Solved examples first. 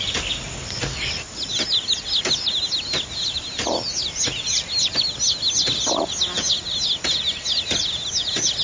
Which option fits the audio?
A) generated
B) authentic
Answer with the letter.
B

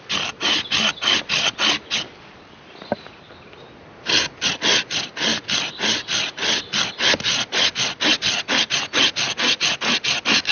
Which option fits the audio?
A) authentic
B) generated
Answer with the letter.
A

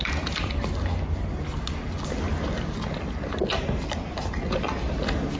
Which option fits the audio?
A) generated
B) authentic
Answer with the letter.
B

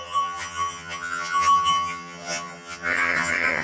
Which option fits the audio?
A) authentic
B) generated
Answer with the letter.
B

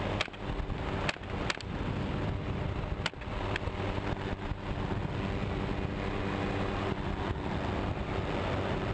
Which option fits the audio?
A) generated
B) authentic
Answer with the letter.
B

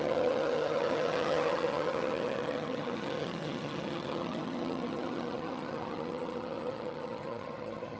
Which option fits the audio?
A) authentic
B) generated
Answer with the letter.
B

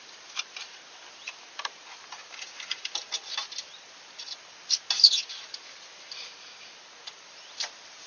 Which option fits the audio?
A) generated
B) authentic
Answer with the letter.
B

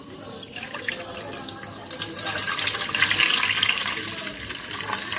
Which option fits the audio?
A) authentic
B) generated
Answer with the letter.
A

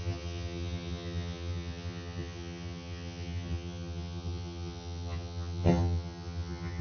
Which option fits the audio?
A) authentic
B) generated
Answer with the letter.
B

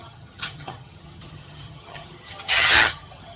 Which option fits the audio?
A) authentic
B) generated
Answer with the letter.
B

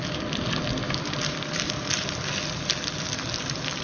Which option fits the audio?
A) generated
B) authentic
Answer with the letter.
B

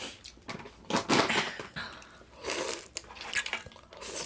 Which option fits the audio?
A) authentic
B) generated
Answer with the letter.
A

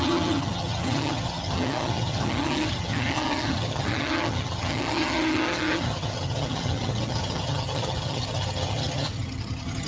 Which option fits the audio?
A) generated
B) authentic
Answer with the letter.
A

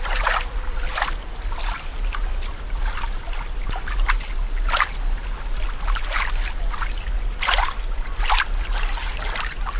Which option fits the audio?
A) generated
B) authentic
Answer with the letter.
B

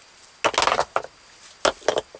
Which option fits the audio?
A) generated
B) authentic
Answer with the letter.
B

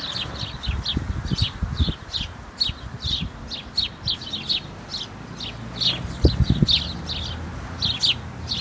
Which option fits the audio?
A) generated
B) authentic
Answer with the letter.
B